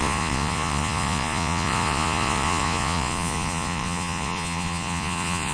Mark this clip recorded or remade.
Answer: remade